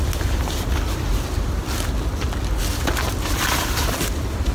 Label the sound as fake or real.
real